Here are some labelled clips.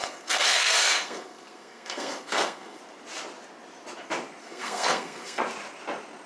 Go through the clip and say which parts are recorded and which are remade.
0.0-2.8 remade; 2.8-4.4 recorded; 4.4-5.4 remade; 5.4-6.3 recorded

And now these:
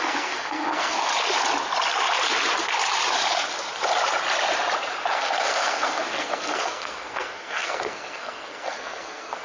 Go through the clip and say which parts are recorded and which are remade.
0.0-1.1 remade; 1.1-5.1 recorded; 5.1-9.4 remade

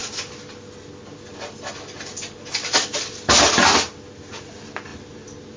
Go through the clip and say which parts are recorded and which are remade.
0.0-5.6 recorded